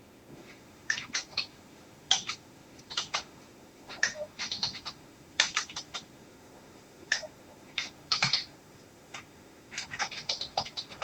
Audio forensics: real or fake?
fake